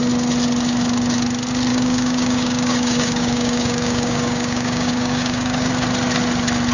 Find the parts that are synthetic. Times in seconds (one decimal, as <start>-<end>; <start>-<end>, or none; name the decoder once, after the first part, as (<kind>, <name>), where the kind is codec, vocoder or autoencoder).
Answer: 1.7-5.7 (codec, DAC)